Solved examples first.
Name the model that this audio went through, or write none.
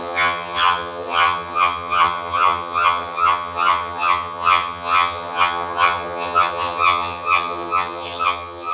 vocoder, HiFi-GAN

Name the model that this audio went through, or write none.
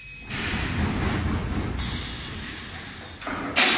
none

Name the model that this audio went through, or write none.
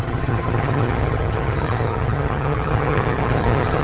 vocoder, HiFi-GAN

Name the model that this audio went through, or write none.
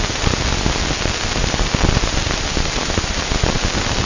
none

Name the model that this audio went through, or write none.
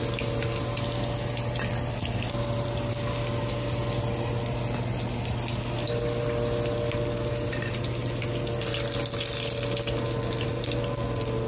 none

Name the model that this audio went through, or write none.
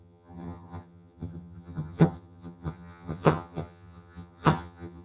vocoder, HiFi-GAN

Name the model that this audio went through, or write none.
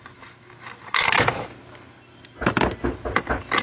none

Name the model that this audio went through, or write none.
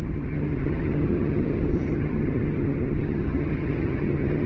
vocoder, HiFi-GAN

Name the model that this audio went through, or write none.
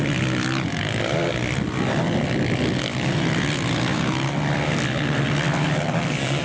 none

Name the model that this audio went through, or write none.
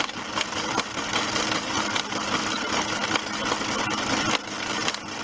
none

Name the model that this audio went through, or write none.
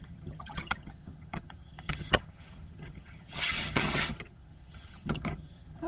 vocoder, HiFi-GAN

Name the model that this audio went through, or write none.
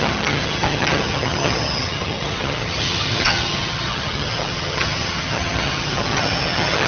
vocoder, HiFi-GAN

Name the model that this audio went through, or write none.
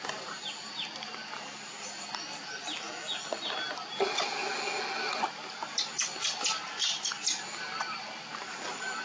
none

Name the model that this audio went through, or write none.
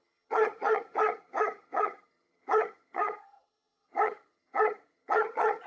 vocoder, HiFi-GAN